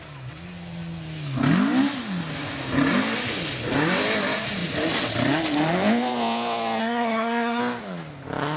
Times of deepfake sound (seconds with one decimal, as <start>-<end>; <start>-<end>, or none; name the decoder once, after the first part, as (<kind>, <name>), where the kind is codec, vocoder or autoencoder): 6.8-7.6 (codec, SNAC)